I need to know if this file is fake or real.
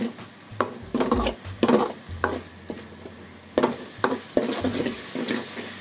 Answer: real